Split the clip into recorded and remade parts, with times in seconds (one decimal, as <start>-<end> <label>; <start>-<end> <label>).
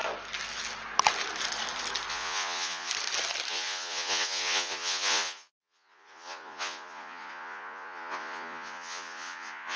0.0-2.1 recorded; 2.1-2.9 remade; 2.9-3.5 recorded; 3.5-9.8 remade